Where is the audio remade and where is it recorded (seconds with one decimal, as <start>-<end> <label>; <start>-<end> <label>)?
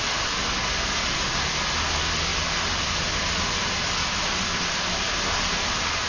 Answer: 0.0-2.3 recorded; 2.3-3.6 remade; 3.6-4.0 recorded; 4.0-6.1 remade